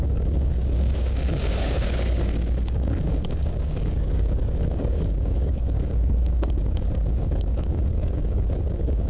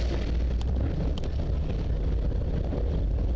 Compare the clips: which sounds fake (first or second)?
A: first